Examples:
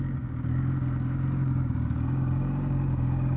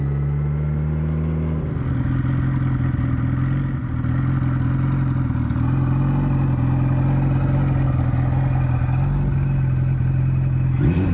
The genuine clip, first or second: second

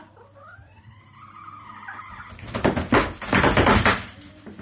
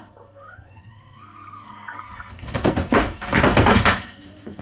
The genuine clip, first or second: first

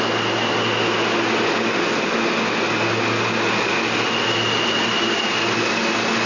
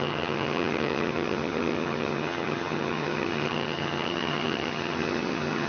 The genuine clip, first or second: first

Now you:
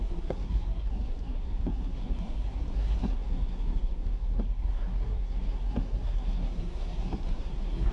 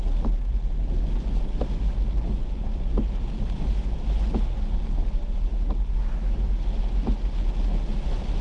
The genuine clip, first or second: second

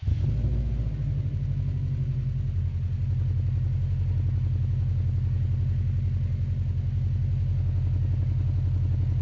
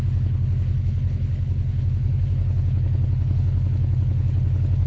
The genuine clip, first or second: first